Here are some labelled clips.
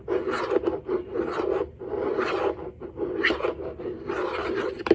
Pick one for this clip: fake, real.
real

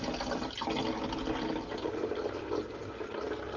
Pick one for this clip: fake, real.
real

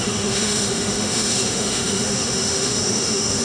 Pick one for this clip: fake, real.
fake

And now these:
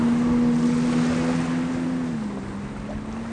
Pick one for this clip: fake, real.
real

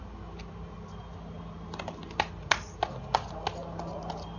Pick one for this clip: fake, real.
real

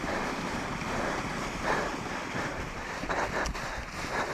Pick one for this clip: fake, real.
fake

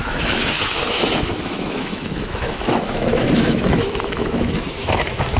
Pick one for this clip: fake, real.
fake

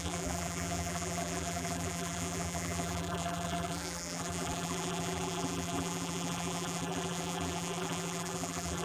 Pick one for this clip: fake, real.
fake